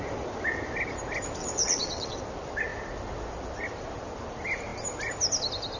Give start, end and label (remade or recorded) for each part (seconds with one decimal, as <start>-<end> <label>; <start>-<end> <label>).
0.0-1.4 recorded; 1.4-2.2 remade; 2.2-5.8 recorded